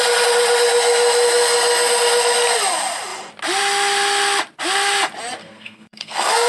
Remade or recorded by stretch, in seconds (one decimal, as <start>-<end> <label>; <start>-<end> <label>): 0.0-5.4 recorded; 5.4-6.5 remade